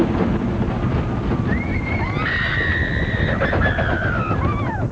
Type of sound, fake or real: real